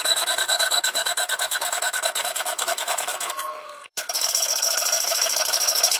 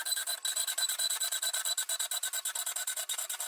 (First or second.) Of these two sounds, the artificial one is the first